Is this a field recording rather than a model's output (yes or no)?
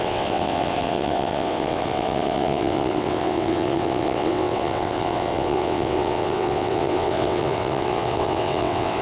no